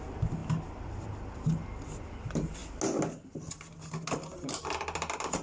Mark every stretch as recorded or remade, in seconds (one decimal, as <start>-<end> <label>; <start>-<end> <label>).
0.0-5.4 recorded